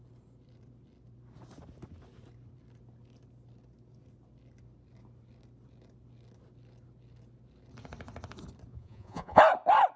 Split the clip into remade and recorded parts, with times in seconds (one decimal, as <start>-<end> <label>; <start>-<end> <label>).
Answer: 0.0-8.7 recorded; 8.7-9.4 remade; 9.4-10.0 recorded